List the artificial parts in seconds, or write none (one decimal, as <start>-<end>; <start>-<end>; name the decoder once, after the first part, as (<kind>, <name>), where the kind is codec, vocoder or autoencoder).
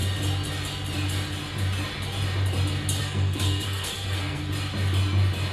3.0-4.4 (codec, SNAC)